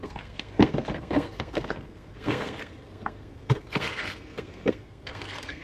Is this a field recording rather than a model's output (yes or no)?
no